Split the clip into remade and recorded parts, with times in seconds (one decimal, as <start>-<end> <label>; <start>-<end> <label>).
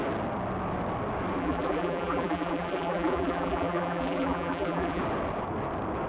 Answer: 0.0-1.4 recorded; 1.4-5.0 remade; 5.0-6.1 recorded